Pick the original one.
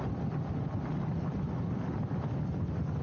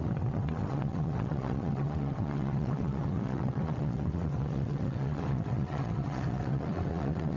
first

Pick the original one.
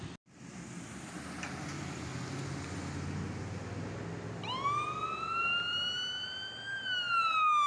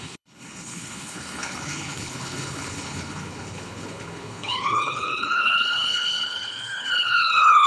first